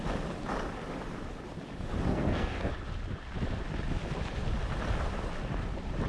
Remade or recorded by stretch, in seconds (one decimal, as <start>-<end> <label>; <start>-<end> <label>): 0.0-2.1 recorded; 2.1-2.7 remade; 2.7-6.1 recorded